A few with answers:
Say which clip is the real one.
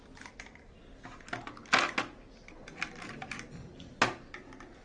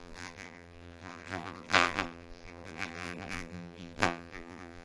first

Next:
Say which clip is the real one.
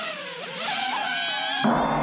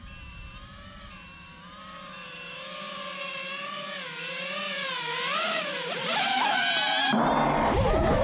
first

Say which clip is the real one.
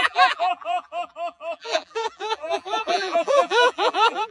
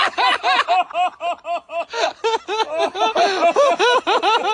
second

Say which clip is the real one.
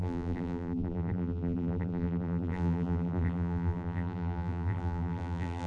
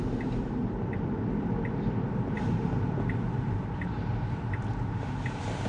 second